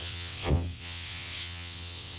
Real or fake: fake